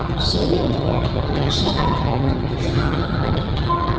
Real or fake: fake